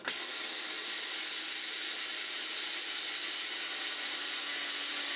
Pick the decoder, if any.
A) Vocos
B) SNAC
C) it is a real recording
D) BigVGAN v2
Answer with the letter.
C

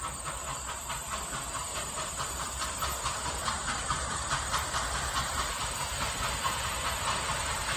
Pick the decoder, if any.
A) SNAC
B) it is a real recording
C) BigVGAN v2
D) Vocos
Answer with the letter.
B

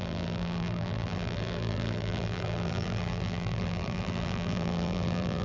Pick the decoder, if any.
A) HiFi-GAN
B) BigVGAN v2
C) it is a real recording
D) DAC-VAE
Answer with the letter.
B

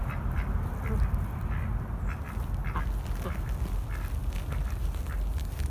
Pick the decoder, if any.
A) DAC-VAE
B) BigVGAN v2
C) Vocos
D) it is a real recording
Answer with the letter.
D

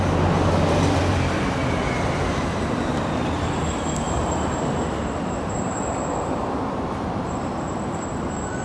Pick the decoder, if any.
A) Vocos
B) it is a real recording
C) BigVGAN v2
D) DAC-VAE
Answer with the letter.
C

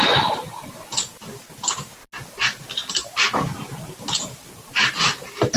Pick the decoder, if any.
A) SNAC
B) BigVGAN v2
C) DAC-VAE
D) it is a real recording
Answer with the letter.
D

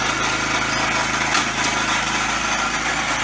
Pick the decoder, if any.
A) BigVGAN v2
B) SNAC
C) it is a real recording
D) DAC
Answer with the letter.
C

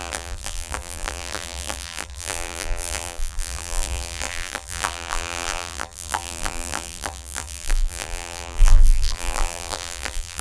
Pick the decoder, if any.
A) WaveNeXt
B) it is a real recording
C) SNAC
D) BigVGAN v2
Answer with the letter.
D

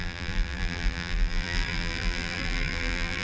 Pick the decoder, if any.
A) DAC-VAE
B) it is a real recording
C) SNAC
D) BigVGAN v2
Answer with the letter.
D